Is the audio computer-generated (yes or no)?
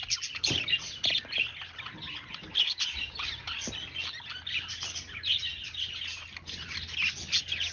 no